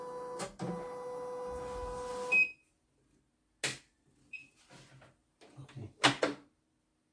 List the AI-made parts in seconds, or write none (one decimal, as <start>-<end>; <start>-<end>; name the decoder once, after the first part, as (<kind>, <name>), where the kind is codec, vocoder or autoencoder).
none